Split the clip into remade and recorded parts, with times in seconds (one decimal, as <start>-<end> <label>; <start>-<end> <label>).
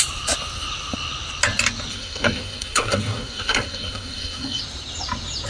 0.0-1.9 recorded; 1.9-4.6 remade; 4.6-5.5 recorded